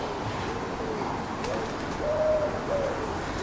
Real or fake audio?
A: real